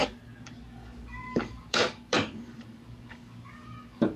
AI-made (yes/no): yes